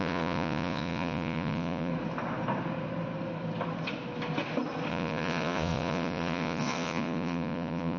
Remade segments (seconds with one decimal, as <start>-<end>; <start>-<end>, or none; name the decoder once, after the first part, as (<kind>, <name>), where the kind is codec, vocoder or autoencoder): 0.0-1.9 (vocoder, Vocos); 4.9-8.0